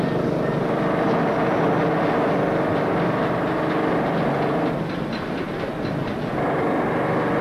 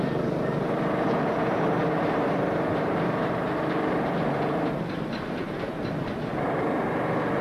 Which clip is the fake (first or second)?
second